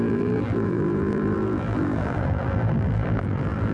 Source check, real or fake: fake